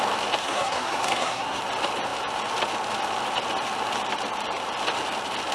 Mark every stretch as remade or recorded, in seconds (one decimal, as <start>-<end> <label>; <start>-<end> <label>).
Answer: 0.0-0.4 recorded; 0.4-1.6 remade; 1.6-5.5 recorded